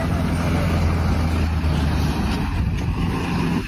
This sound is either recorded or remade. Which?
recorded